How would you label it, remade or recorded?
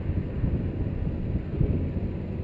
recorded